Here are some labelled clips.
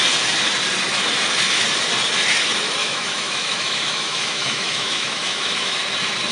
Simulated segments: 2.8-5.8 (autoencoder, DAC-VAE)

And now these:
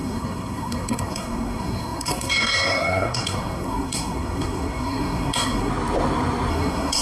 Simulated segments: 0.0-5.7 (codec, SNAC); 6.5-7.0

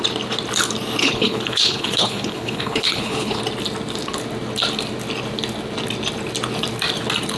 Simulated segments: 1.0-3.4 (codec, HILCodec)